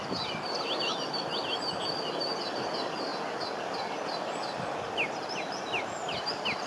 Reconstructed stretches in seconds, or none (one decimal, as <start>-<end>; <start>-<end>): none